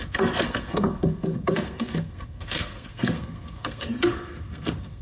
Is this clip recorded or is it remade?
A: remade